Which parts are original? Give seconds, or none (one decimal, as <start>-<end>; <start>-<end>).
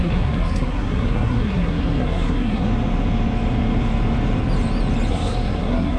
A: 2.7-5.1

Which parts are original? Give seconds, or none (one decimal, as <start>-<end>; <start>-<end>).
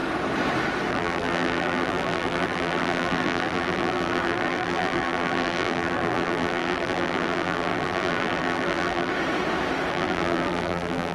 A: 0.0-0.9; 9.1-9.9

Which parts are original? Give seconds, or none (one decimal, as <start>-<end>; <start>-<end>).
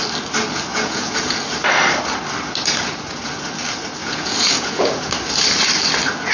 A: 0.0-0.7; 1.4-4.0; 5.1-6.3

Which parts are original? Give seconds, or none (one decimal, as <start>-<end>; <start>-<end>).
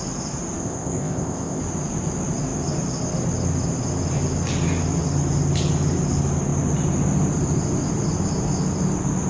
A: 0.0-0.6; 1.6-9.3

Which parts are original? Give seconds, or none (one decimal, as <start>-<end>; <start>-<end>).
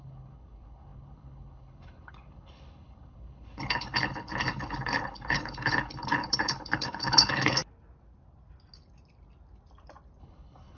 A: 7.6-10.2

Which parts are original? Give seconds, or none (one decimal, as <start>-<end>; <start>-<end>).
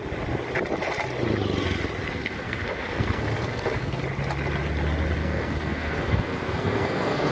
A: 0.0-2.1; 4.0-5.2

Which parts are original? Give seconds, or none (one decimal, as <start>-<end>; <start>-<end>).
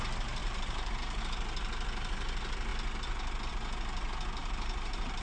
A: 0.0-0.4; 1.2-4.4